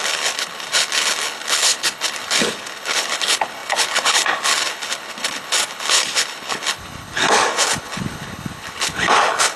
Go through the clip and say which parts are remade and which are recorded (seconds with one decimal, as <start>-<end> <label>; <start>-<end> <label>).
0.0-9.6 remade